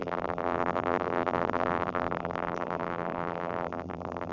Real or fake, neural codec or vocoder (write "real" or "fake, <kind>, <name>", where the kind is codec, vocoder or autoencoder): fake, vocoder, BigVGAN v2